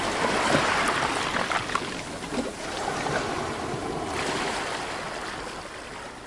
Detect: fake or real real